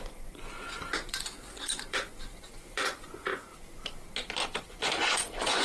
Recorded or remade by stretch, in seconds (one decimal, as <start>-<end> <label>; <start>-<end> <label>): 0.0-3.5 remade; 3.5-4.6 recorded; 4.6-5.6 remade